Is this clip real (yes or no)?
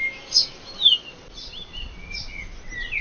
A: yes